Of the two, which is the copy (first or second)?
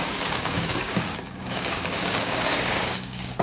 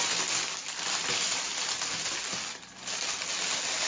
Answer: first